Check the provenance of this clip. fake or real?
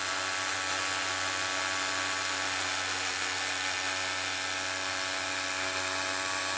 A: real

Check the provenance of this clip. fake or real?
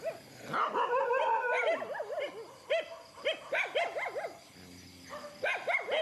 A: real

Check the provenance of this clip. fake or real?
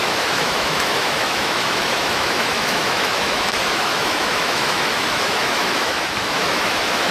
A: fake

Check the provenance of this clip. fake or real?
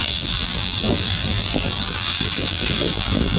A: fake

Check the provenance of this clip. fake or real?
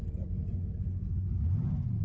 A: real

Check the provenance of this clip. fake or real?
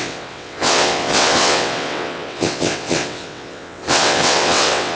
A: fake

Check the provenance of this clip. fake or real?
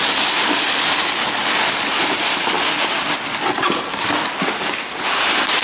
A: real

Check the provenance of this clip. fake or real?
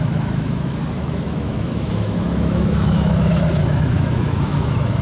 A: fake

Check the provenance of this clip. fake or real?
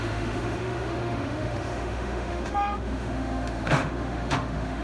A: fake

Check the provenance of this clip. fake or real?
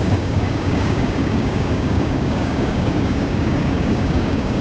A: fake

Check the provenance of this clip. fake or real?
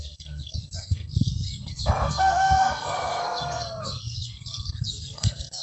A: fake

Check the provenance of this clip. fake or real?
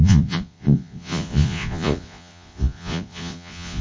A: fake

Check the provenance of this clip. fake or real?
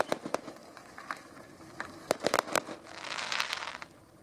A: real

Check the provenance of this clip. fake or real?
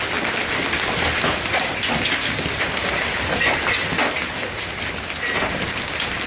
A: real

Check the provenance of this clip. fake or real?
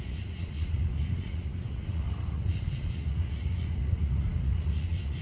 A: fake